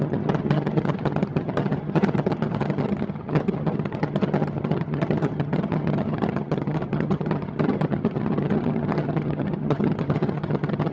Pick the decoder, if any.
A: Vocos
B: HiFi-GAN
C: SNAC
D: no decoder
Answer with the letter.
B